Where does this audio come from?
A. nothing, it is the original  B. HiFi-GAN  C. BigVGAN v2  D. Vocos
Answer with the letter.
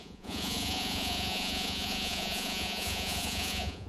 D